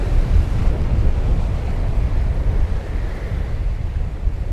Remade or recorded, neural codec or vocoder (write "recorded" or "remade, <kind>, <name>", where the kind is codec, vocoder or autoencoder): recorded